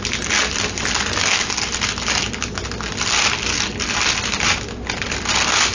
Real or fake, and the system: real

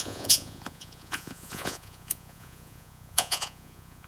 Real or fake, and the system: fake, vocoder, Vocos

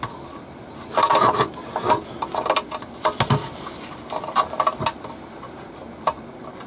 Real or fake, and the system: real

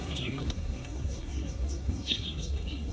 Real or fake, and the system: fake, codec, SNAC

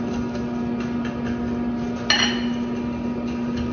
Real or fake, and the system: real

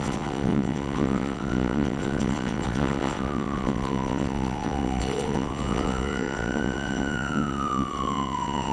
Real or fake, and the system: fake, vocoder, WaveNeXt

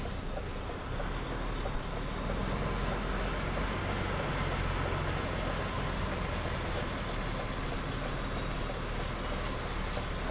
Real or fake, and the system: real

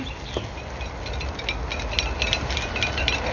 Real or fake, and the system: real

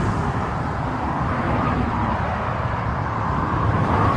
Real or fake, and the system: real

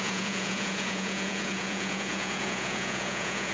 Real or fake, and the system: fake, vocoder, Vocos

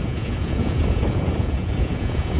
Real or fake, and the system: fake, vocoder, Vocos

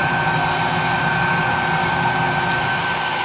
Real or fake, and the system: real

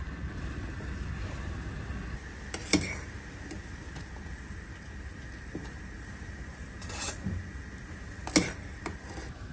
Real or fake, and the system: real